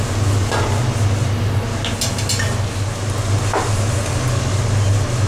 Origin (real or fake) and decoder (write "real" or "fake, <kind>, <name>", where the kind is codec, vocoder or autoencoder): real